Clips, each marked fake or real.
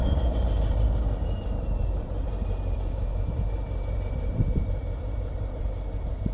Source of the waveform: fake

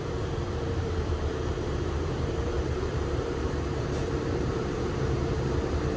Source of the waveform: fake